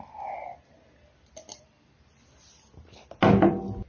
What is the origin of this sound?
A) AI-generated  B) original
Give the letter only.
B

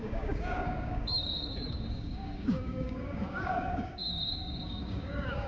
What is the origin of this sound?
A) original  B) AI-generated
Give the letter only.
B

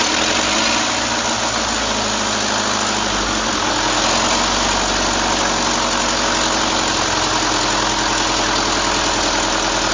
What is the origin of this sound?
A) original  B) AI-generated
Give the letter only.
A